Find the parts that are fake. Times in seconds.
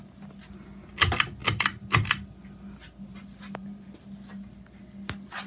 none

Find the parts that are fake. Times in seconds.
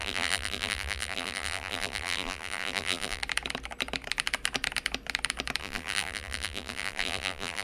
0.0-3.2 (vocoder, BigVGAN v2); 5.6-7.6